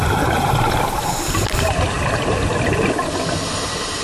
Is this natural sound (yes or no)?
yes